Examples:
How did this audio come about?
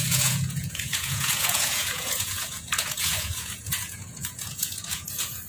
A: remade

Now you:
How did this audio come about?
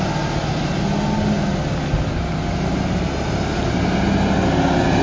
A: recorded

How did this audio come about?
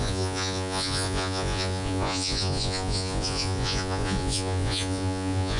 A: remade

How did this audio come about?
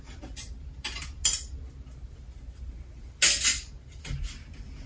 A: recorded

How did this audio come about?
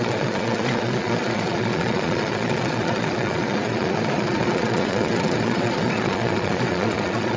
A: remade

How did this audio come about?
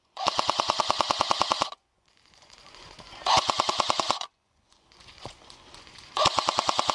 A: remade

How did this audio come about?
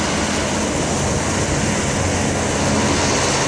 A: recorded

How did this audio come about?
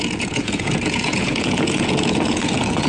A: remade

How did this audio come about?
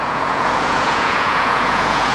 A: remade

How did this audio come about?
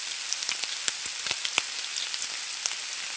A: recorded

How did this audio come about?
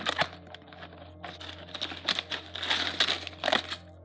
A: recorded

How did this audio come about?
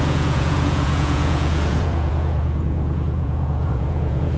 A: remade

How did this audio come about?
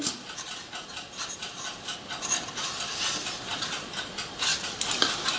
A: recorded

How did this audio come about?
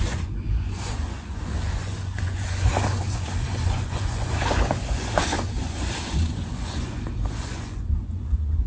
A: remade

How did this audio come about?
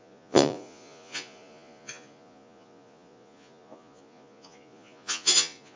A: remade